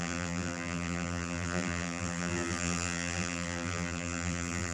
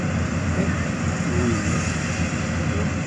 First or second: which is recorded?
second